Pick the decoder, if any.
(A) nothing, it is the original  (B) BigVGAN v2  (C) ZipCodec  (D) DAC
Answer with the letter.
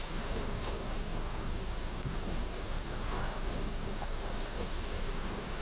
D